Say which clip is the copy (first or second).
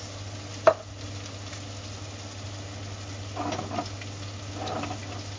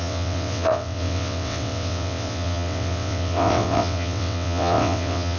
second